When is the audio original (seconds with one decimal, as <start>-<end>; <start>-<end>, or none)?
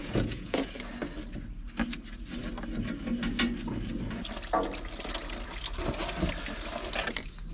0.7-7.5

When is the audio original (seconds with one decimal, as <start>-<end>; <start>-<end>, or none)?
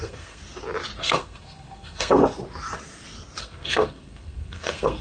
0.4-1.0; 2.2-3.4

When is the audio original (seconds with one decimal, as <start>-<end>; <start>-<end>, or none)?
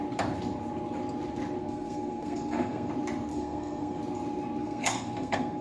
0.0-1.6; 2.9-3.3; 4.0-4.6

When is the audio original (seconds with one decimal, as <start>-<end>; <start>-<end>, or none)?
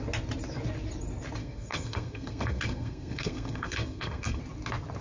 0.0-1.4; 4.4-5.0